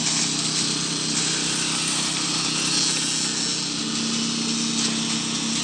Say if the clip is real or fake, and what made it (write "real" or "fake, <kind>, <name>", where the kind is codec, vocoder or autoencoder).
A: real